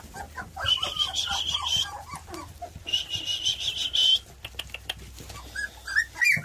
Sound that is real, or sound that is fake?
real